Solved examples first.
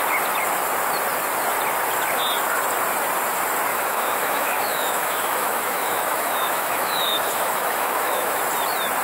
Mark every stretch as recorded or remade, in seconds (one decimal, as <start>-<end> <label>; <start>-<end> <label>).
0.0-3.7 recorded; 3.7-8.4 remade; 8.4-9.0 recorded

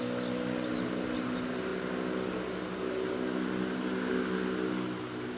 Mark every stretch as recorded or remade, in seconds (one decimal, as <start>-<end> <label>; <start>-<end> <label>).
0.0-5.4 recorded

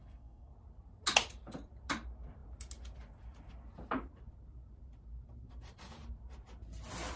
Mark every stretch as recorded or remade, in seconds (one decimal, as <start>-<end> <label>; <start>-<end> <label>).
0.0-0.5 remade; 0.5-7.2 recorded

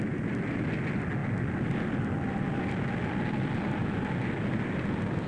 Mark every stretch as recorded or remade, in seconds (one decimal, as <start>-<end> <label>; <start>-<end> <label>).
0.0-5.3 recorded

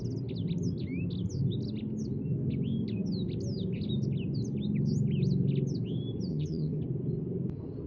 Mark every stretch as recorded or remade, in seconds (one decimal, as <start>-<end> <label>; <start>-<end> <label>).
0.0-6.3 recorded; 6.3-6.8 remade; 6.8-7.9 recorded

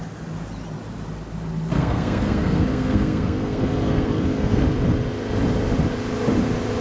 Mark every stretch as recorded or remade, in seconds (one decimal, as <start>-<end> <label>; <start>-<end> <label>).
0.0-1.7 recorded; 1.7-4.6 remade; 4.6-6.8 recorded

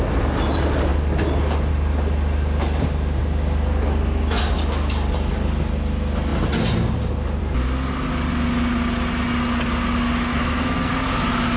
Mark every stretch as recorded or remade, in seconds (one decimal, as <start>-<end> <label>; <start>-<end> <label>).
0.0-10.3 recorded; 10.3-10.9 remade; 10.9-11.6 recorded